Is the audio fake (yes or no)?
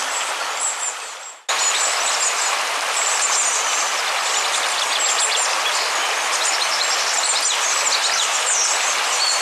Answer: no